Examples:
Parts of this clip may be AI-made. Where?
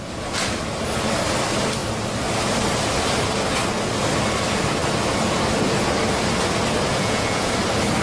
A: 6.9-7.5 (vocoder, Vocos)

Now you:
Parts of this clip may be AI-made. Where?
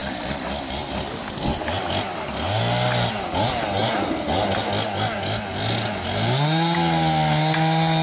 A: none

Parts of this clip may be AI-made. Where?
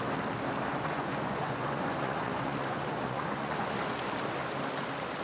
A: 0.7-3.8 (vocoder, Vocos)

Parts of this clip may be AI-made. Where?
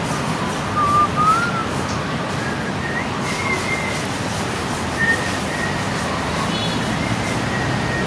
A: none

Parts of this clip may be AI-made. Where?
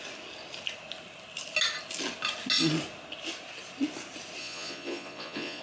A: 4.4-5.6 (vocoder, Vocos)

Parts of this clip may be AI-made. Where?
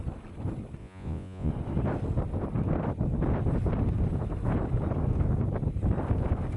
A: 0.8-1.5 (vocoder, Vocos)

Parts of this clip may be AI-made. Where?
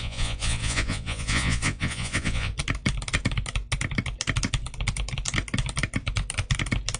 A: 0.0-2.5 (vocoder, Vocos)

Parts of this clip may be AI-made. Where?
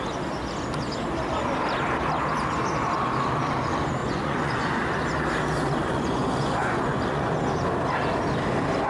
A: 4.0-4.7 (vocoder, Vocos); 5.8-7.3